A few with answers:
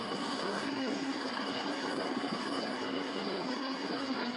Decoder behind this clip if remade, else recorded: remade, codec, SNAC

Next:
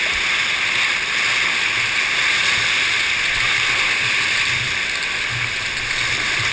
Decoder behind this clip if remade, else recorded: recorded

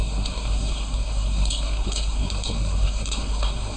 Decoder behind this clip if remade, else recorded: remade, codec, SNAC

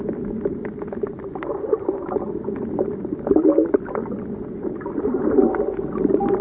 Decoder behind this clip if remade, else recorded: recorded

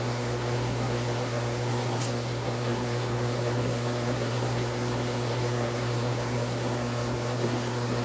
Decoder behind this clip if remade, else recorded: remade, codec, SNAC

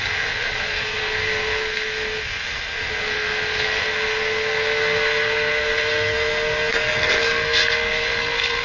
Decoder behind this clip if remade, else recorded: remade, codec, SNAC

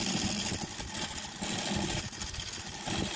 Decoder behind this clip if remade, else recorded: recorded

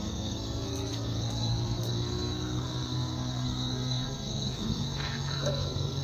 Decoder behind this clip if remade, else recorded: remade, codec, SNAC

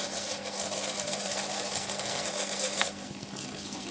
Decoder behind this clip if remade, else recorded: remade, codec, SNAC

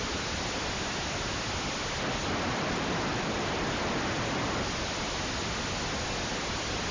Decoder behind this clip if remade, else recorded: recorded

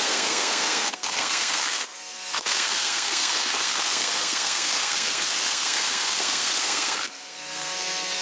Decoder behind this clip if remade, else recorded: remade, codec, SNAC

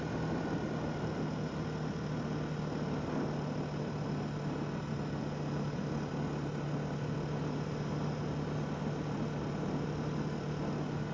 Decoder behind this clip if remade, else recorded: recorded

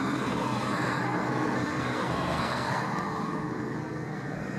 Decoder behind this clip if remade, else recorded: remade, codec, SNAC